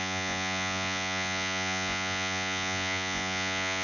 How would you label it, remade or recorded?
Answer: remade